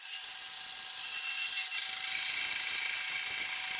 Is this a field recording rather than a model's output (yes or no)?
yes